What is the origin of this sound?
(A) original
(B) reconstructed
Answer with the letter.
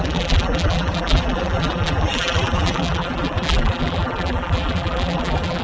B